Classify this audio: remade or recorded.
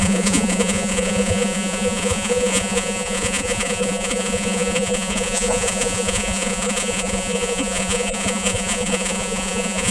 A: remade